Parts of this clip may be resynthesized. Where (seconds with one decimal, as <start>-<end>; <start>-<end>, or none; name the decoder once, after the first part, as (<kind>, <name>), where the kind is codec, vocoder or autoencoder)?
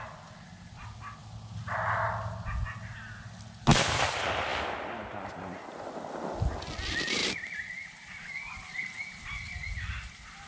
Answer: none